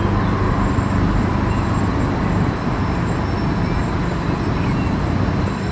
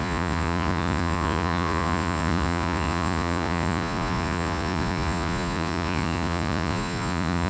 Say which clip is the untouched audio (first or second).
first